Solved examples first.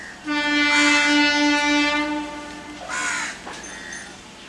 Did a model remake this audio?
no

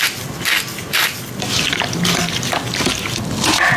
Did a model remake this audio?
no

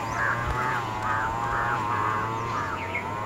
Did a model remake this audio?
yes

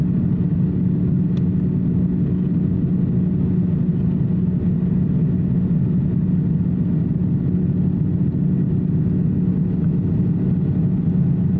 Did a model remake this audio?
no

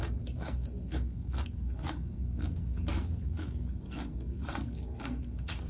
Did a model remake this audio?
yes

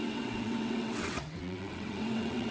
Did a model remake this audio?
yes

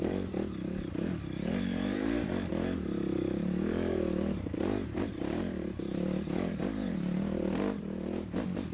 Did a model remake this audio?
yes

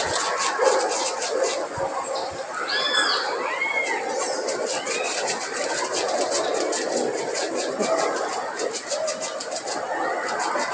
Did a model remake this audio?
no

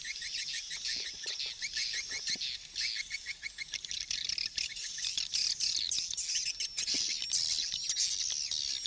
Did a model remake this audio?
no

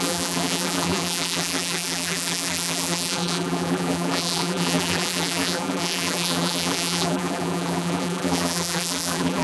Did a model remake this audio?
yes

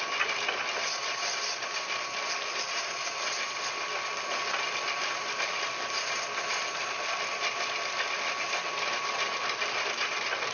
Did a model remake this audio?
no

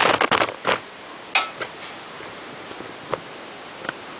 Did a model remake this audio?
no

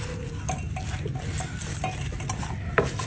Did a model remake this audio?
no